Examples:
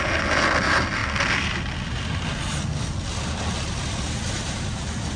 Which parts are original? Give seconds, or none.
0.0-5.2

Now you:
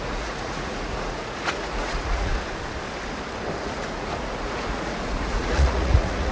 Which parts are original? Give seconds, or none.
2.3-3.6

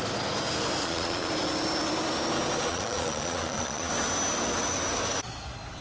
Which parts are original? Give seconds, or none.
0.0-0.8; 1.3-2.7; 3.9-5.8

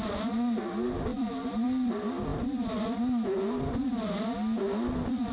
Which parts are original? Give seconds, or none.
0.0-1.1; 1.9-5.3